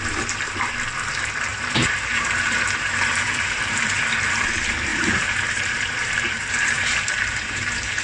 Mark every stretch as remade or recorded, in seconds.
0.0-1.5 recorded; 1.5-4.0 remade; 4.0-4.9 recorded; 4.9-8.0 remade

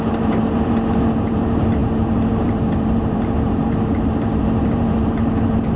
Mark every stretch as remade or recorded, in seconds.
0.0-5.8 remade

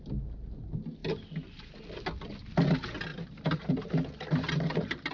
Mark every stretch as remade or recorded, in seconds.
0.0-3.1 recorded; 3.1-5.1 remade

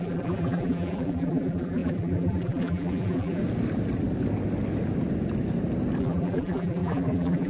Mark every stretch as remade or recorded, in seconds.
0.0-3.4 remade; 3.4-6.0 recorded; 6.0-7.5 remade